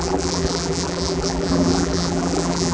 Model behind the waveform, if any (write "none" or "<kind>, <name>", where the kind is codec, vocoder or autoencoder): vocoder, BigVGAN v2